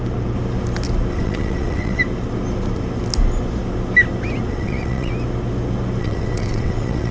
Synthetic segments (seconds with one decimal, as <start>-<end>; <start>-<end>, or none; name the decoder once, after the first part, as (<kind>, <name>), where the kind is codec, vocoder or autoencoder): 1.1-2.0 (vocoder, WaveNeXt); 4.5-5.1; 6.0-7.1